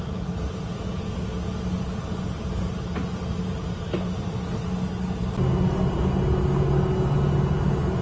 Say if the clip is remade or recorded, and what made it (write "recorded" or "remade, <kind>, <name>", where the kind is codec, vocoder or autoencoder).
recorded